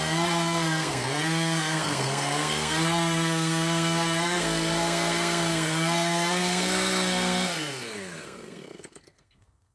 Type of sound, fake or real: fake